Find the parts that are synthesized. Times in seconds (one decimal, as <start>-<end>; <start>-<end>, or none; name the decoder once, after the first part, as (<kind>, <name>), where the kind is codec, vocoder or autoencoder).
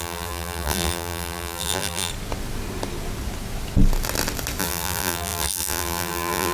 0.0-2.1 (vocoder, BigVGAN v2); 4.6-6.5